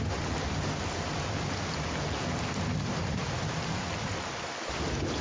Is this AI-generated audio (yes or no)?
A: no